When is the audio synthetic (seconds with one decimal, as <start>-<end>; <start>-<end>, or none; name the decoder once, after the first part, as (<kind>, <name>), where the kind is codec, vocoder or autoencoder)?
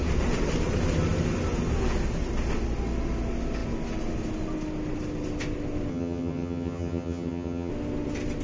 5.9-7.7 (vocoder, HiFi-GAN)